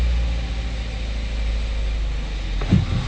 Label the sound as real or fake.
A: real